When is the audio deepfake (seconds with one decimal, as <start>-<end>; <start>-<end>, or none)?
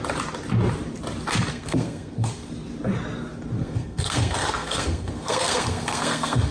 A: 1.5-2.5; 3.6-6.5